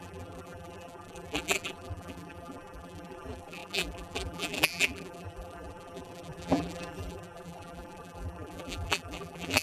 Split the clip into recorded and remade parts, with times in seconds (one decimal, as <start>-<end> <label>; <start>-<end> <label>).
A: 0.0-9.6 remade